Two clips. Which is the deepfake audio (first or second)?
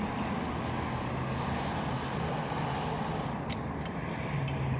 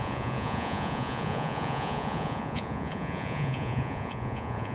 second